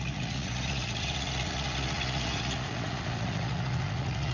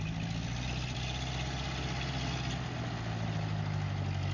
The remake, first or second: first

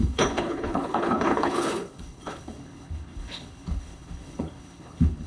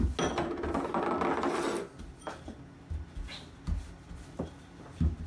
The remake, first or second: first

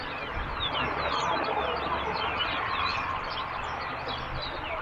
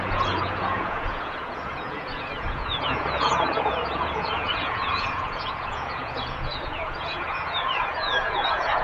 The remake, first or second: second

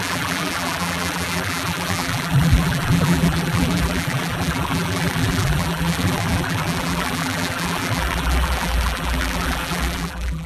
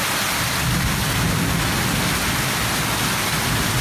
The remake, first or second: first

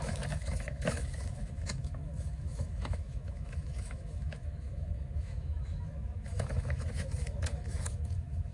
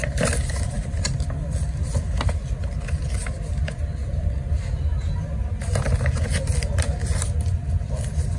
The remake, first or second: first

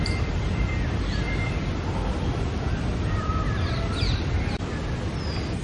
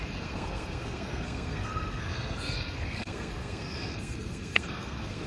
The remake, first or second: second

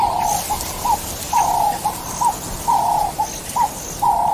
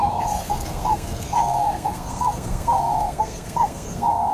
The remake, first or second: second